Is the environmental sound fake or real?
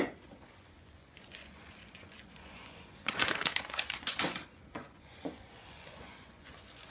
fake